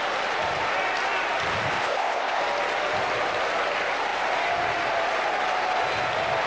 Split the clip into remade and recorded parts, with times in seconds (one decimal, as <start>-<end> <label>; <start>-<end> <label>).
0.0-1.7 recorded; 1.7-2.4 remade; 2.4-6.5 recorded